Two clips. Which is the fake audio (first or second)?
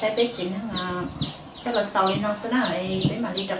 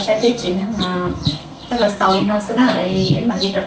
second